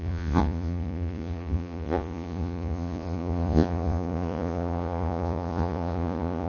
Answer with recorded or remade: remade